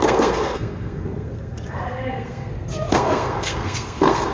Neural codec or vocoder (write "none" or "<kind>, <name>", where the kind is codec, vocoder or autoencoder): codec, SNAC